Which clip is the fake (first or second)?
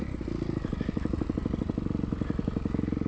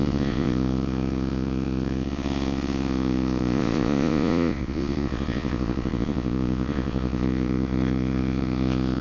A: second